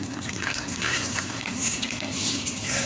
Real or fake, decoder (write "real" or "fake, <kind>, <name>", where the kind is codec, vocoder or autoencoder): fake, codec, SNAC